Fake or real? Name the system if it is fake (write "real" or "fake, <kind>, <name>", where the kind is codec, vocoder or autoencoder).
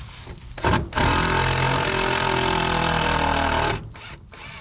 real